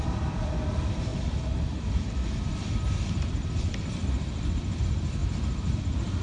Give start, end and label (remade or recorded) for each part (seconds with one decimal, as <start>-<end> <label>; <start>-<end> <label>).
0.0-5.2 remade; 5.2-5.8 recorded; 5.8-6.2 remade